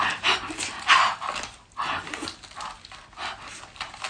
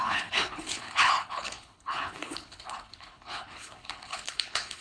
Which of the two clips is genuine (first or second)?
first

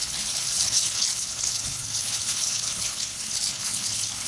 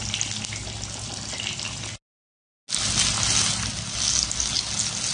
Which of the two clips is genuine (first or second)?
second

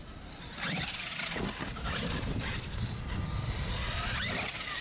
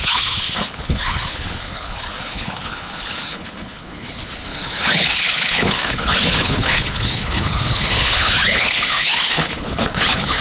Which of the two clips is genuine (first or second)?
first